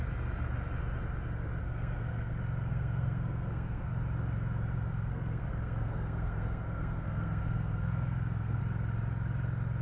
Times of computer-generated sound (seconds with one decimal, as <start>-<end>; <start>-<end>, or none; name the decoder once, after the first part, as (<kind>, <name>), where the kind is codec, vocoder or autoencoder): 1.6-2.3 (codec, SNAC); 2.7-3.9; 4.9-8.6